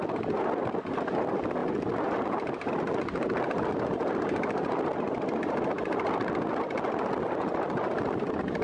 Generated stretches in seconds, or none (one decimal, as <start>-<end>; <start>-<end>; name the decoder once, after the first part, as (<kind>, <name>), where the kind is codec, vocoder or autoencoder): none